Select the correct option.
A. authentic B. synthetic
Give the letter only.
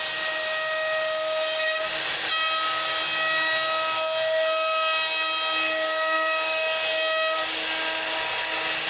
A